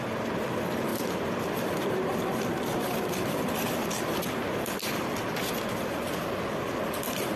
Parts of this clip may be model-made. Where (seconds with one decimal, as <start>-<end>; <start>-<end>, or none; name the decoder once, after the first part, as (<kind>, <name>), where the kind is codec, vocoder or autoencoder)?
0.9-5.3 (vocoder, BigVGAN v2)